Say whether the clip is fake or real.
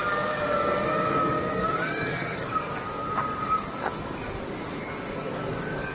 fake